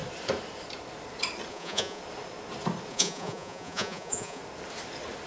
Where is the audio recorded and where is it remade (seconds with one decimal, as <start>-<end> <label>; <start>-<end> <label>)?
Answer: 0.0-1.5 recorded; 1.5-2.0 remade; 2.0-2.9 recorded; 2.9-4.4 remade; 4.4-5.3 recorded